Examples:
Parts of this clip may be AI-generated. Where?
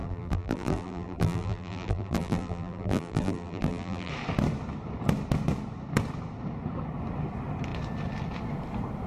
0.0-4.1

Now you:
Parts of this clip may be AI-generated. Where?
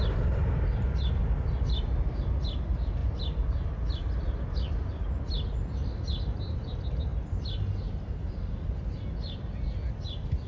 none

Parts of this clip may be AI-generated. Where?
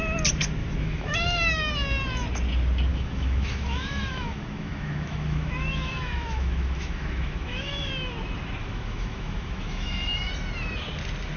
0.6-1.7; 2.9-7.9; 8.6-10.3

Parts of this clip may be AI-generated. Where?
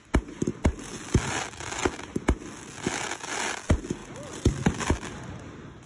4.0-4.9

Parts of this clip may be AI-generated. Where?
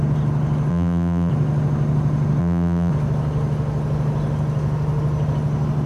0.7-1.3; 2.4-2.9